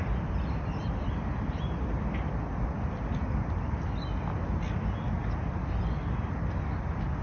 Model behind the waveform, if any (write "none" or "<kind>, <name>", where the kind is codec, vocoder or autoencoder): none